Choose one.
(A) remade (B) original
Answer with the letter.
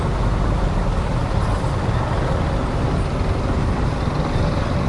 B